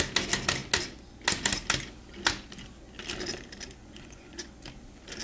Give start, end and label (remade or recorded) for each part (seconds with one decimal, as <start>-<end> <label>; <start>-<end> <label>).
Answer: 0.0-3.8 recorded; 3.8-4.5 remade; 4.5-5.2 recorded